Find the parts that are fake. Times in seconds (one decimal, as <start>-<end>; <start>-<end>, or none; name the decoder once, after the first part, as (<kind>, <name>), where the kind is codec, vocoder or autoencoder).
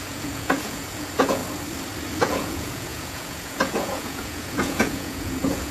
0.0-1.4 (vocoder, Vocos); 2.2-5.7